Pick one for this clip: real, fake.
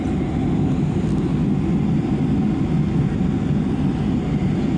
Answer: real